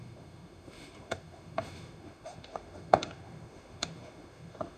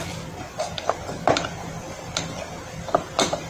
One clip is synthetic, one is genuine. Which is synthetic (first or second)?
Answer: first